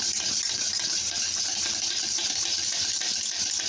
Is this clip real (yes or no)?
yes